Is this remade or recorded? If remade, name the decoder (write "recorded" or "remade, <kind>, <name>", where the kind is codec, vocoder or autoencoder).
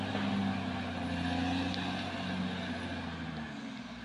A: recorded